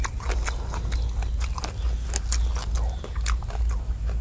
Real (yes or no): yes